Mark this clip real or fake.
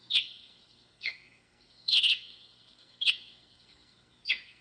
fake